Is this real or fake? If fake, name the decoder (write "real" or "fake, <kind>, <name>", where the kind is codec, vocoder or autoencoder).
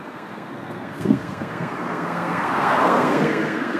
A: fake, codec, SNAC